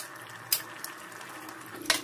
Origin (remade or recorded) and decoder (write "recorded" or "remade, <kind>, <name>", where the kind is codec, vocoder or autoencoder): recorded